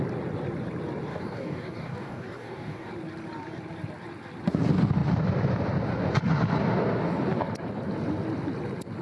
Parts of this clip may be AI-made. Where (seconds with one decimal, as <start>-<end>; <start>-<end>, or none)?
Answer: 1.1-2.9